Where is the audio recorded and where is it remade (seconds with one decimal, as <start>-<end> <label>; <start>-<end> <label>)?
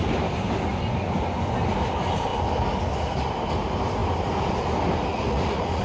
0.0-5.1 recorded; 5.1-5.8 remade